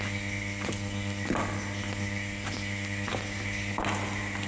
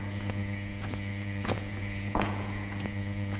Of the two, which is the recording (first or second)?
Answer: first